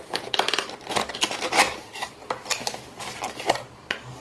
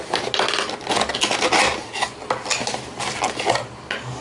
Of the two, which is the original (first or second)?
second